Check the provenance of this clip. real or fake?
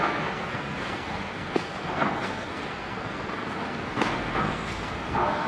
fake